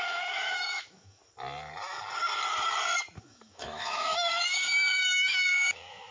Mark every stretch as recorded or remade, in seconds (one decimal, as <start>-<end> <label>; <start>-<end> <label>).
0.0-1.2 remade; 1.2-3.2 recorded; 3.2-6.1 remade